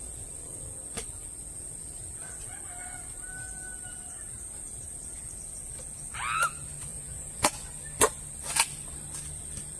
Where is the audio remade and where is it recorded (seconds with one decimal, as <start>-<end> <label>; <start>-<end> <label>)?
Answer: 0.0-6.9 recorded; 6.9-7.5 remade; 7.5-9.8 recorded